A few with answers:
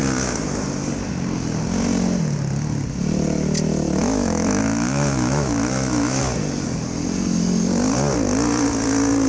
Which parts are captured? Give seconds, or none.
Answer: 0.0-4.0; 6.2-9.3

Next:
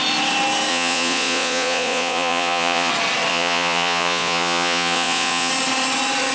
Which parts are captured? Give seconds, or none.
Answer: 0.0-0.7; 2.9-3.3; 5.5-6.3

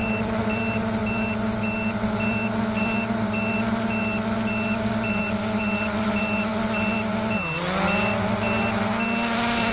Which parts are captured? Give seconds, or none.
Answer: 0.0-9.7

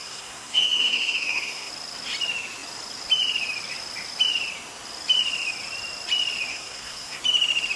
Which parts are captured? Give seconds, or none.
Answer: 1.7-6.5; 7.2-7.8